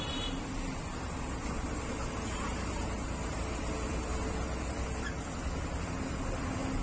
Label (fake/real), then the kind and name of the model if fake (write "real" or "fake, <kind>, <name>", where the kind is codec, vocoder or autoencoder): real